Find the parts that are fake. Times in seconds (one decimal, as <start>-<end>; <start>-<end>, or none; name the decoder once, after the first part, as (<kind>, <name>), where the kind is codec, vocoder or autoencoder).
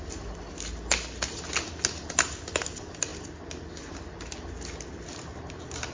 none